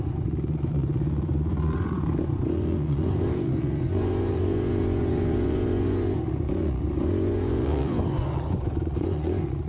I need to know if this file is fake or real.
fake